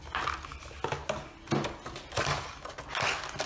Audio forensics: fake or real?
real